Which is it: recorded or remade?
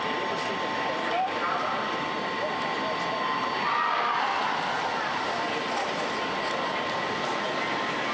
recorded